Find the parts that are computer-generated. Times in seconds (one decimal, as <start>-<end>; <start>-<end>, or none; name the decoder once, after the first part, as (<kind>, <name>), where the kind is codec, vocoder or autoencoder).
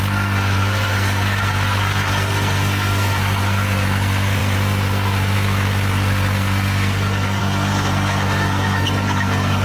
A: 0.0-9.6 (codec, SNAC)